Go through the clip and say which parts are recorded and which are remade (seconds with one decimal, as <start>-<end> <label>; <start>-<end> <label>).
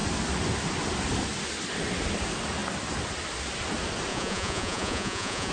0.0-4.1 recorded; 4.1-5.5 remade